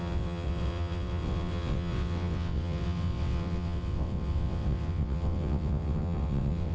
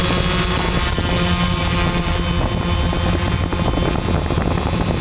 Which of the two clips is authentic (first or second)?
second